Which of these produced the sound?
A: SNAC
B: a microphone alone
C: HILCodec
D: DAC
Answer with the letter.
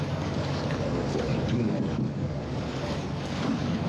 D